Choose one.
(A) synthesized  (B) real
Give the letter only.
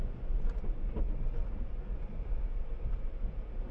B